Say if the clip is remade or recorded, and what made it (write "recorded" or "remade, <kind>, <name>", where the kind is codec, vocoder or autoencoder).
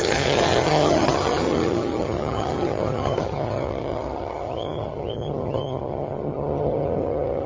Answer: remade, vocoder, HiFi-GAN